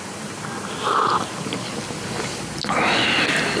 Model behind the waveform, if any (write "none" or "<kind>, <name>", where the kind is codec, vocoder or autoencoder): none